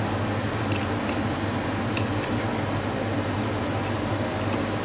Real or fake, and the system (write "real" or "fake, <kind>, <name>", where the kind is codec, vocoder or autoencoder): real